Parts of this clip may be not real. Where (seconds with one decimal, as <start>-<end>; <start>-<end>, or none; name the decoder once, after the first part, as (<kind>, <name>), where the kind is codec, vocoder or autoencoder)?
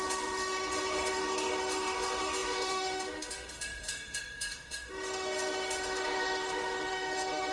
0.0-7.5 (autoencoder, DAC-VAE)